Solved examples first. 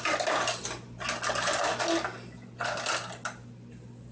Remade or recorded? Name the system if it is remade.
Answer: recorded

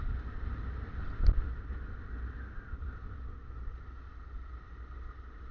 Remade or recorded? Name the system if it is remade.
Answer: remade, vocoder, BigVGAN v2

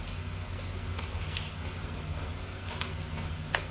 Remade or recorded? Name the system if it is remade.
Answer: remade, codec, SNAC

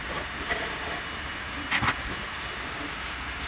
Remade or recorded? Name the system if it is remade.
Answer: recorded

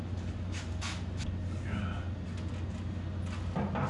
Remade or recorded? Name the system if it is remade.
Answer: recorded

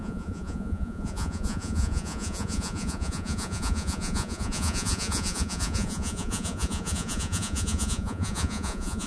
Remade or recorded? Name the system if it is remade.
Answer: remade, vocoder, Vocos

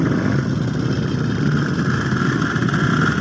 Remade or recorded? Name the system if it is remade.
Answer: recorded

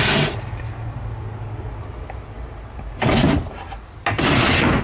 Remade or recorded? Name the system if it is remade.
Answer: recorded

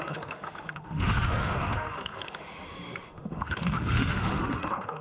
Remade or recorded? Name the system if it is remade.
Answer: remade, autoencoder, DAC-VAE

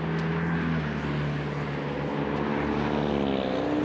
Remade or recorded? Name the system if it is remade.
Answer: recorded